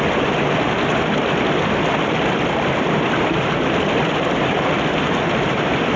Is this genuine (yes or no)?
yes